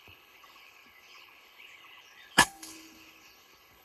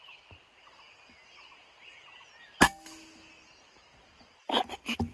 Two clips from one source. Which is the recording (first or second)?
second